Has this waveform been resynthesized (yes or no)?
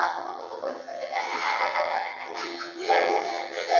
yes